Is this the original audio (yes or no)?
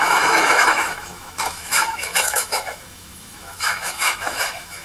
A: no